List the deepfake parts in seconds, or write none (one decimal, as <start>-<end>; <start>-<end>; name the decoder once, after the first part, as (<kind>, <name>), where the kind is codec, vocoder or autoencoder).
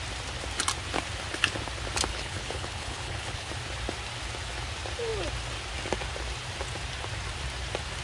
2.1-3.5 (codec, HILCodec)